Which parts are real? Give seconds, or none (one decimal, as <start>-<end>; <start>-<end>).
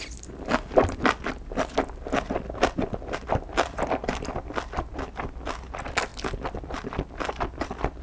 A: 0.0-8.0